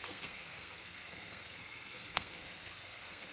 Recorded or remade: remade